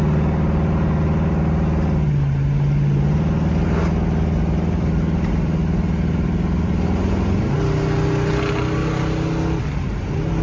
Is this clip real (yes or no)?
yes